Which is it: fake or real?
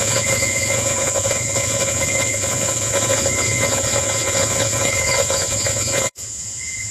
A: fake